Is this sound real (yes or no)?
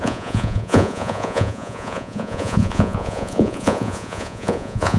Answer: no